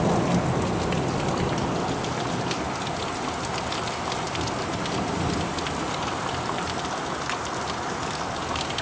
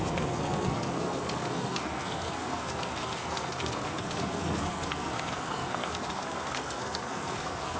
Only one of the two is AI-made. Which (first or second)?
second